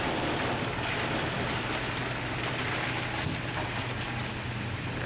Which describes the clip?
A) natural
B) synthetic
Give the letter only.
A